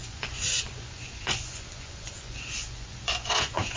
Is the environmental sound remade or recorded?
remade